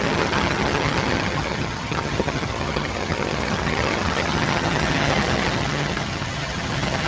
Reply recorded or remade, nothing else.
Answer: remade